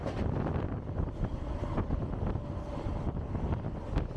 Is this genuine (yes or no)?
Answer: yes